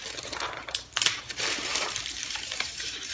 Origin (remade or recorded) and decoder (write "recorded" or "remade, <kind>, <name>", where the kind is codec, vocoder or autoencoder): remade, vocoder, BigVGAN v2